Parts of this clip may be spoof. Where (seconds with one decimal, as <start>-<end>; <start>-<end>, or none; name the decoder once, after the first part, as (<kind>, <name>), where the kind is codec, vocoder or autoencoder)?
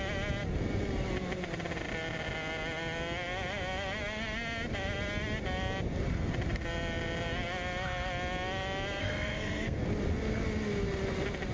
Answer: 9.0-9.8 (codec, SNAC)